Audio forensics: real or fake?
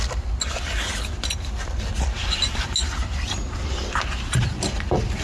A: real